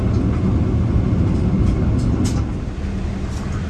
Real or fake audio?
real